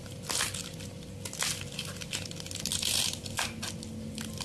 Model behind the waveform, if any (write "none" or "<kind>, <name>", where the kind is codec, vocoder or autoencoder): none